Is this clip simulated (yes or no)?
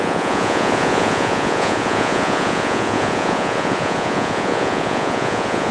yes